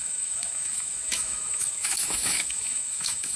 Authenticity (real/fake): fake